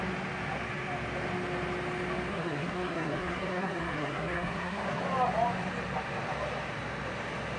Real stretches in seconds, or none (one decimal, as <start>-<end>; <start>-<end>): 0.0-2.3; 5.0-7.6